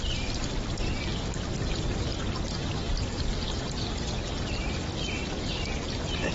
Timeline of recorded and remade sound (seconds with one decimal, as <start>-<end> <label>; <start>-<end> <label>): 0.0-1.1 recorded; 1.1-1.7 remade; 1.7-6.3 recorded

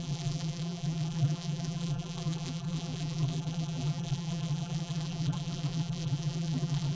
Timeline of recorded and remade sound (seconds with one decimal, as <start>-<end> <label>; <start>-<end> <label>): 0.0-6.9 remade

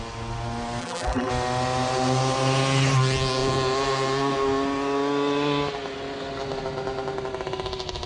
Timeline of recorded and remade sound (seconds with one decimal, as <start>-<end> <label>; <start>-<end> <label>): 0.0-0.8 recorded; 0.8-1.3 remade; 1.3-8.1 recorded